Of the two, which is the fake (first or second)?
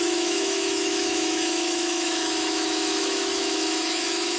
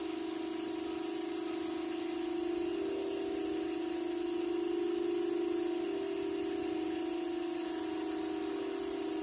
first